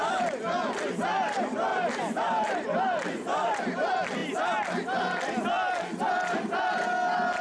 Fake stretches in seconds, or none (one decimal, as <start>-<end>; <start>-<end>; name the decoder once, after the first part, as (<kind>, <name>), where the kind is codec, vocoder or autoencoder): 1.7-3.6 (vocoder, BigVGAN v2)